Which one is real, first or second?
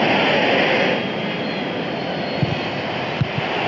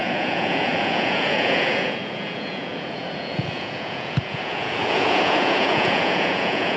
first